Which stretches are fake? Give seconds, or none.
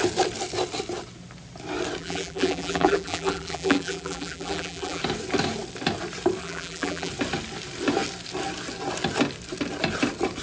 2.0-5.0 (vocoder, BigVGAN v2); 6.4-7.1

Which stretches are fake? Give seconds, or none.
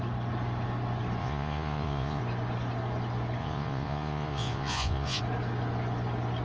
1.2-2.2 (vocoder, Vocos); 3.4-5.2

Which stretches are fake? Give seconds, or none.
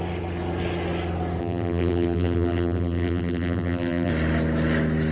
1.4-4.1 (vocoder, BigVGAN v2)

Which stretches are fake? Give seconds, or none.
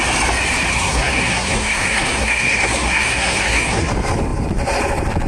0.7-3.9 (codec, SNAC)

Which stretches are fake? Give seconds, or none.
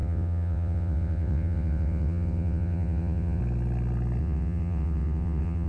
0.0-3.4 (vocoder, WaveNeXt); 4.2-5.7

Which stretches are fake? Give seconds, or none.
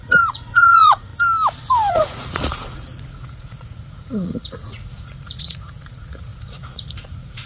0.0-1.1 (vocoder, Vocos); 1.9-7.5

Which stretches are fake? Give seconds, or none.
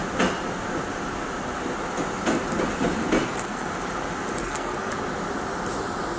3.2-3.7 (codec, SNAC); 4.4-4.9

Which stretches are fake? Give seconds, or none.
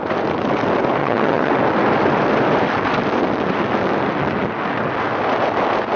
1.0-1.5 (vocoder, HiFi-GAN)